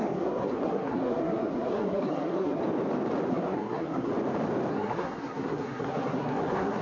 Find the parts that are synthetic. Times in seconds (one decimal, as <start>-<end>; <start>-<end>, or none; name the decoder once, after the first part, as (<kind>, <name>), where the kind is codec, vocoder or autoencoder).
0.0-2.6 (codec, SNAC); 3.3-4.1; 4.7-6.8